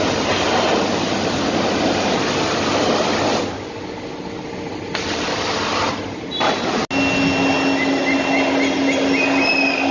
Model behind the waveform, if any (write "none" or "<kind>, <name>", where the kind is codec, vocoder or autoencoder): none